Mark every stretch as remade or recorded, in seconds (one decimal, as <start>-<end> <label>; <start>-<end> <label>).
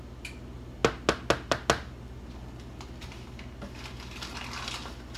0.0-5.2 recorded